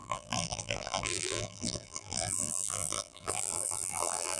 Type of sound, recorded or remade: remade